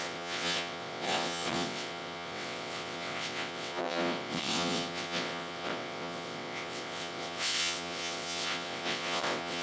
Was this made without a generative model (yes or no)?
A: no